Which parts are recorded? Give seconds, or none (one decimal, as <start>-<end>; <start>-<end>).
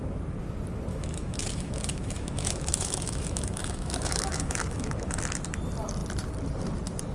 0.0-0.9; 5.2-7.1